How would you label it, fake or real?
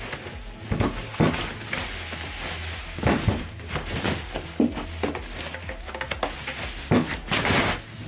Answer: real